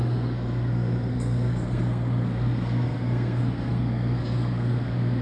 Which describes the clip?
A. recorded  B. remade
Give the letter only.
B